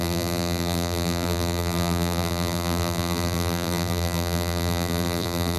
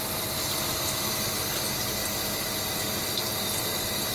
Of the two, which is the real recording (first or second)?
second